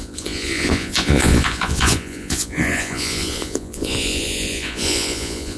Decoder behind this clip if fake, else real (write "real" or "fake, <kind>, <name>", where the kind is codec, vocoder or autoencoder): fake, vocoder, Vocos